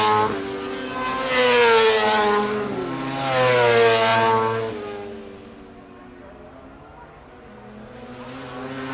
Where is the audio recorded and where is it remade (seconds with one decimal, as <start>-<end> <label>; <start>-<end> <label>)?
0.0-8.9 recorded